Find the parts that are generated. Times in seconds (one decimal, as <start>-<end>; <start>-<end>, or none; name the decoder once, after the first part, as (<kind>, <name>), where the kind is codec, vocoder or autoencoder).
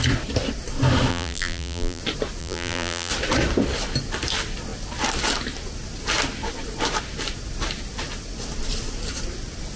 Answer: 1.1-2.0 (vocoder, BigVGAN v2); 2.4-3.1